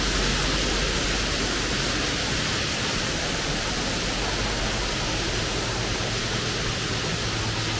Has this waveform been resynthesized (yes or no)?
no